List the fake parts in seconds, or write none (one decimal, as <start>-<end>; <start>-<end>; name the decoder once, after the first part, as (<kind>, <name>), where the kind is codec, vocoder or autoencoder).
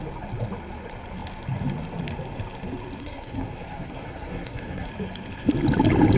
3.0-4.9 (codec, SNAC)